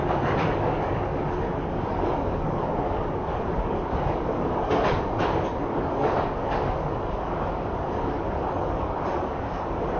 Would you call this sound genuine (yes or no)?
no